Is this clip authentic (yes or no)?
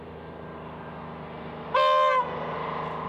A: yes